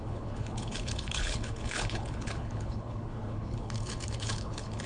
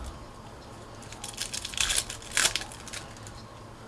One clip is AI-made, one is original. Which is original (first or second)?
second